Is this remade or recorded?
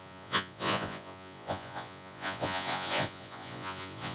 remade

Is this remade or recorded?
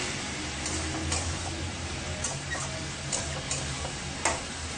recorded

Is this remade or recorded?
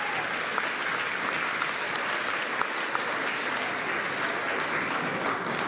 recorded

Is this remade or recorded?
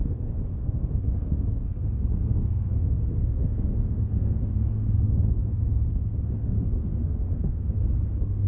remade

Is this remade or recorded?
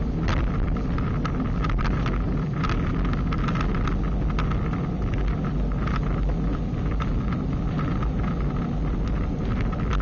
recorded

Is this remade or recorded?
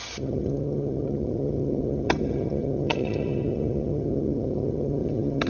remade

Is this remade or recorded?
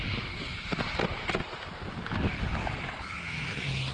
recorded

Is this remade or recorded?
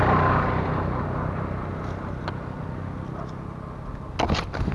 recorded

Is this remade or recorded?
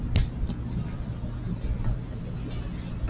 recorded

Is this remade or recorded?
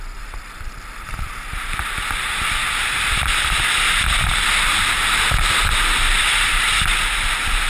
recorded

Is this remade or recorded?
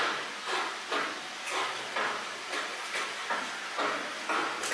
recorded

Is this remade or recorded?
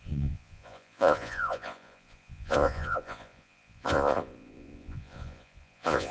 remade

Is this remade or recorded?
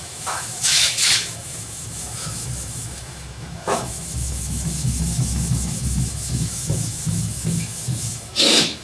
remade